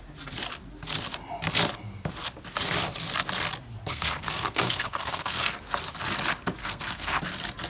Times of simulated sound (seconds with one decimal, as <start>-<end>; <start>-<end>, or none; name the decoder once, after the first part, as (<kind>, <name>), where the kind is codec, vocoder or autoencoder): 3.9-5.5 (codec, SNAC); 6.6-7.2